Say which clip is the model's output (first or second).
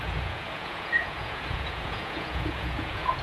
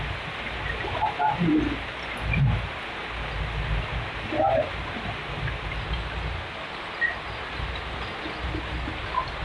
first